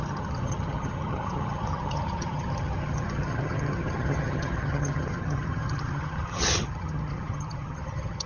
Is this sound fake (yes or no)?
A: yes